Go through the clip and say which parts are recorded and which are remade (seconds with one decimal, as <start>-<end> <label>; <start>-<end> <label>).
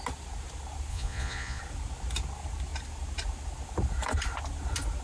0.0-0.9 recorded; 0.9-1.6 remade; 1.6-5.0 recorded